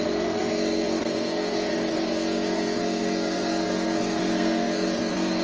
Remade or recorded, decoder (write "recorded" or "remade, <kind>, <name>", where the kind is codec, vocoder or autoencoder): remade, codec, SNAC